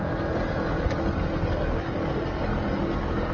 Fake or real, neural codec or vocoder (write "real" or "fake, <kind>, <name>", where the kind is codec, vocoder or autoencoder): real